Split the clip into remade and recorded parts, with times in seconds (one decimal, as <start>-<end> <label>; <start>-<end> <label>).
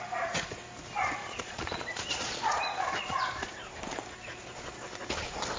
0.0-1.2 recorded; 1.2-3.5 remade; 3.5-5.6 recorded